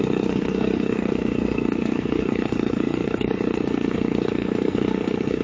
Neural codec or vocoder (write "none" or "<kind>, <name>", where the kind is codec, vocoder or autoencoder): codec, SNAC